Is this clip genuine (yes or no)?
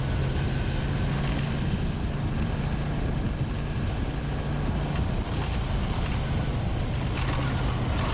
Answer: yes